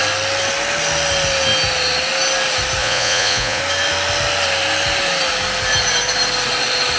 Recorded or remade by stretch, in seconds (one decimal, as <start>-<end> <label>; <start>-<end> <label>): 0.0-2.8 recorded; 2.8-3.6 remade; 3.6-7.0 recorded